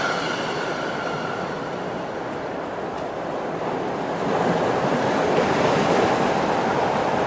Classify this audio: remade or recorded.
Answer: recorded